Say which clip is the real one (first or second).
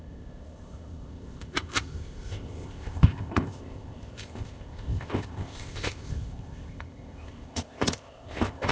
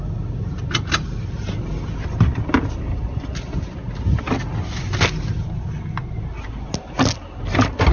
second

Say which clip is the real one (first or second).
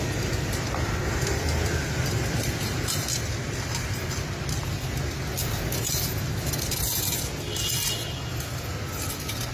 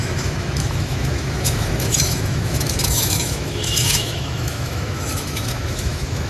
first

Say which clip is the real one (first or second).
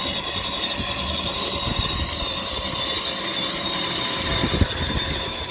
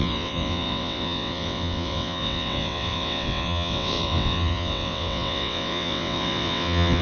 first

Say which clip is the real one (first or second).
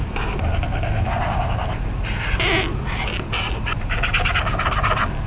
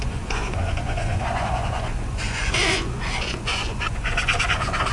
first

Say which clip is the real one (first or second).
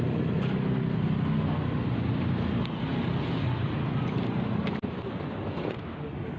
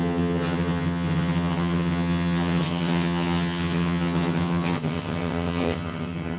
first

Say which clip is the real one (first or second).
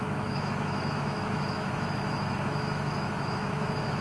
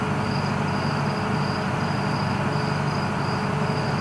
second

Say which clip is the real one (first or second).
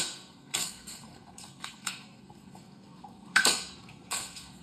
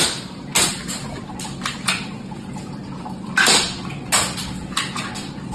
second